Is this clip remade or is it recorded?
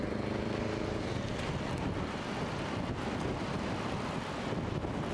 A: recorded